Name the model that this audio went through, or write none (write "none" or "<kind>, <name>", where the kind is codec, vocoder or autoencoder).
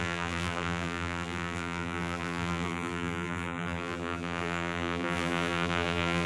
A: vocoder, BigVGAN v2